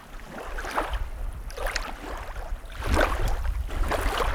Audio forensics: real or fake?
real